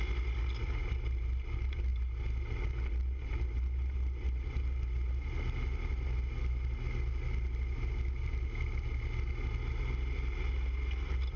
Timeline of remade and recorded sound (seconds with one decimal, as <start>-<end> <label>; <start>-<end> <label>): 0.0-11.4 recorded